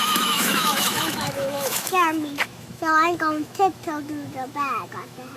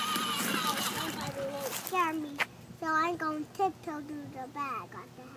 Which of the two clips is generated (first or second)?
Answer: first